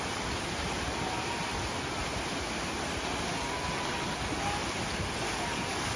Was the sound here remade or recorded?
recorded